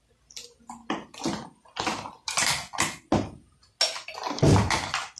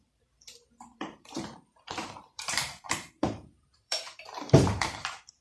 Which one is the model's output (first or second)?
second